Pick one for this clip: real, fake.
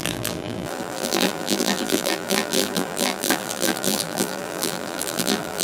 fake